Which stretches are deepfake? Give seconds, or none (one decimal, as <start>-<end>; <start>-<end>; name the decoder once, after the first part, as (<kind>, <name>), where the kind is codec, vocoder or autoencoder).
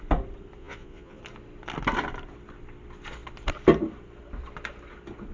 0.6-1.2 (vocoder, Vocos)